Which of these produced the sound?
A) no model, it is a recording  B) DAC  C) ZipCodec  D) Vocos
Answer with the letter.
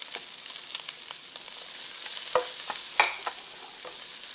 A